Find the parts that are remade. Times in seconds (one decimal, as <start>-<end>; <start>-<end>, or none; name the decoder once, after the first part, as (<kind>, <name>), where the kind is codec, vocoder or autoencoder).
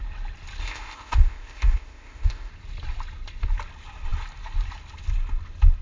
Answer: 0.6-2.5 (codec, ZipCodec)